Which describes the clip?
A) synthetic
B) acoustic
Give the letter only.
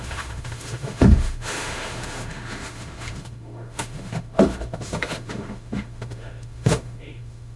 A